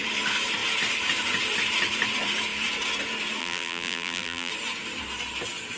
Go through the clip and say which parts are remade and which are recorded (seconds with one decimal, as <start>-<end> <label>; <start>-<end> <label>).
0.0-3.4 recorded; 3.4-4.5 remade; 4.5-5.8 recorded